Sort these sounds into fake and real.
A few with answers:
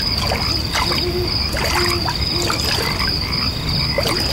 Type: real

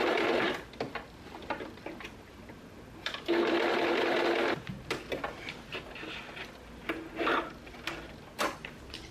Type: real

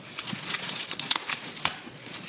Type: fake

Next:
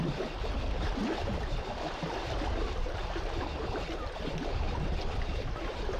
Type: real